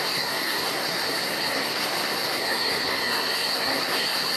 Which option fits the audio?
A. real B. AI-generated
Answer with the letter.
B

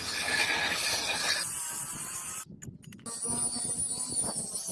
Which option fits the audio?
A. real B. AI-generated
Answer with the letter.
A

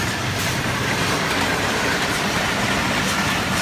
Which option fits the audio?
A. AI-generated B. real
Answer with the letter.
B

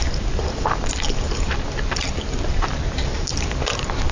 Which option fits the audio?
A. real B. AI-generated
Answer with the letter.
B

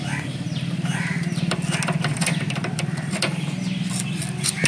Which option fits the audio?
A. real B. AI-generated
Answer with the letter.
A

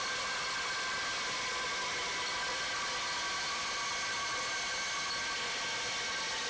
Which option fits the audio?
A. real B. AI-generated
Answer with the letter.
A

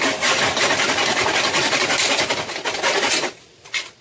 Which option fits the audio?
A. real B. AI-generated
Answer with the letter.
A